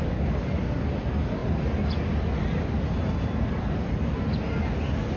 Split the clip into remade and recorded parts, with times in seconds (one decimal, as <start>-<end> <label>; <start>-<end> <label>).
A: 0.0-5.2 recorded